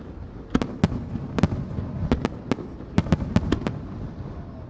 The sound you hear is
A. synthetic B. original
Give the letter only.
B